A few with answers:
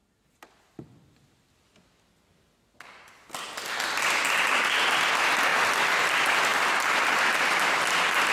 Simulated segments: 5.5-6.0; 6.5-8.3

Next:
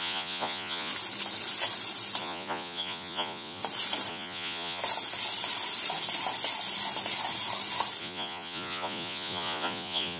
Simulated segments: 0.0-0.9; 2.2-3.6; 4.1-4.8; 8.0-10.2

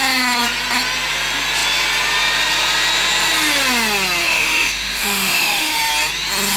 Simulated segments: 4.2-5.9

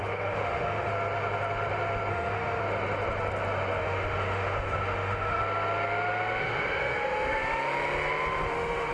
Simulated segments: 0.0-0.9; 2.1-2.6; 3.8-5.4; 6.4-7.4; 8.5-8.9

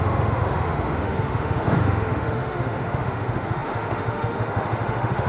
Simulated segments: 0.0-5.3

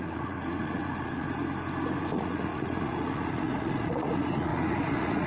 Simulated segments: 0.0-1.4; 2.0-5.3